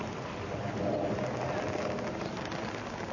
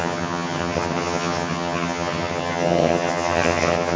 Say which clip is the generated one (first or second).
second